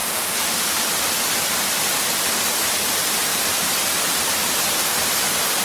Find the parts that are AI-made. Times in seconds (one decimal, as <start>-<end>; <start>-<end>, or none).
0.0-1.9; 3.3-4.4